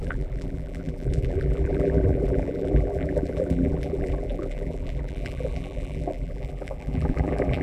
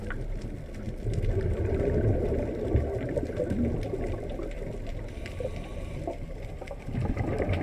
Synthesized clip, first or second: first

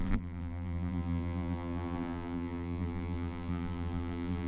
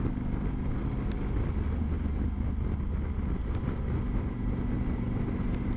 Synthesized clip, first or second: first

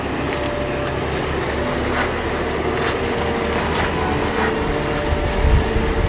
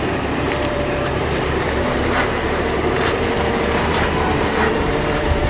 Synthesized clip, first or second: second